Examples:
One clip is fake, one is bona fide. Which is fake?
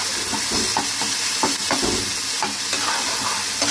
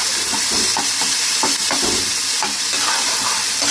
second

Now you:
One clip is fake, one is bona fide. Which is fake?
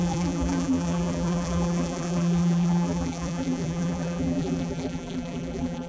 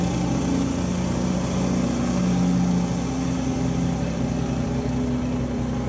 first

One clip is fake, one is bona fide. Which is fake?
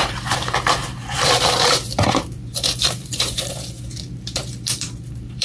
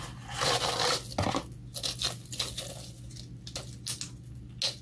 first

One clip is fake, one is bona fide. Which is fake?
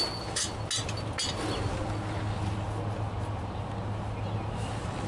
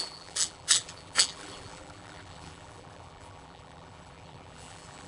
second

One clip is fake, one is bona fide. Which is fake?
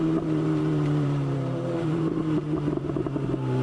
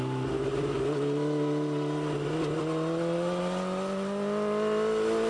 first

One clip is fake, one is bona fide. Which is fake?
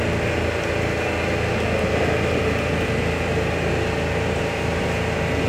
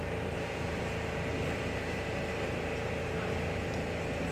second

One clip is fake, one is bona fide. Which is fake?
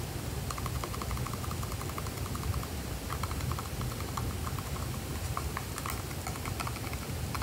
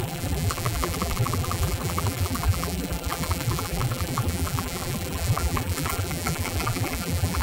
second